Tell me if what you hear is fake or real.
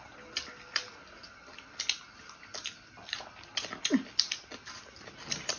real